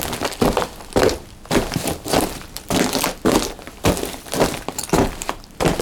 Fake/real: fake